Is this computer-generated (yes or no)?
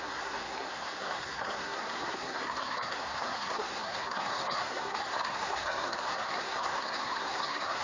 yes